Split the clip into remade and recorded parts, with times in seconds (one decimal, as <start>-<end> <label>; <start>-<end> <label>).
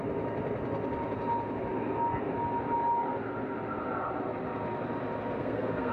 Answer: 0.0-5.4 recorded; 5.4-5.9 remade